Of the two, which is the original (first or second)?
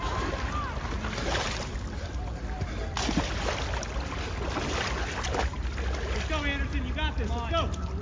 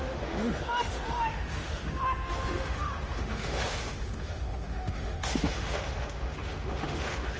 first